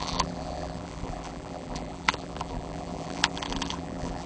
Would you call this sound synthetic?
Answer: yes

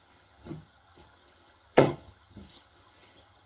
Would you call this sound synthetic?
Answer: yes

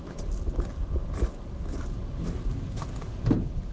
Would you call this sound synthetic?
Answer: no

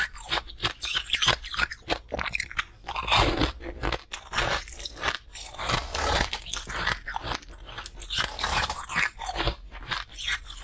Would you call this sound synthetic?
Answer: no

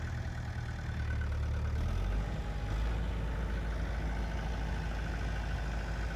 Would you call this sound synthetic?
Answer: no